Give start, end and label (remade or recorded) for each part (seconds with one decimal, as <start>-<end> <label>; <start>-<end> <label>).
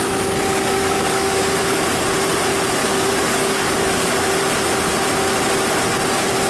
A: 0.0-0.5 recorded; 0.5-1.4 remade; 1.4-2.8 recorded; 2.8-4.1 remade; 4.1-6.5 recorded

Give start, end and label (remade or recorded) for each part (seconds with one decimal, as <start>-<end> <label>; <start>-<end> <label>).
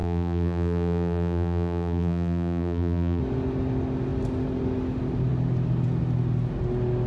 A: 0.0-3.2 remade; 3.2-7.1 recorded